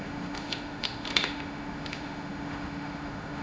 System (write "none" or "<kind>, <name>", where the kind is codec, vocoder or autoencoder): autoencoder, DAC-VAE